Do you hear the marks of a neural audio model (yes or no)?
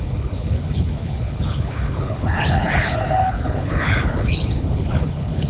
yes